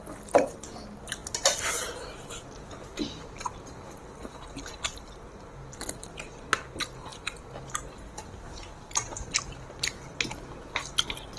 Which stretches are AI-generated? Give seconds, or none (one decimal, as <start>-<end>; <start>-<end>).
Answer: none